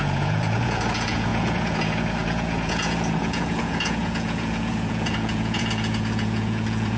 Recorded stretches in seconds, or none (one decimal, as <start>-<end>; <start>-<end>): none